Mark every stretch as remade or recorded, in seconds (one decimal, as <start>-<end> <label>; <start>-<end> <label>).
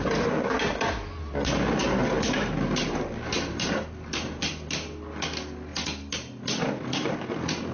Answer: 0.0-3.5 recorded; 3.5-4.5 remade; 4.5-7.7 recorded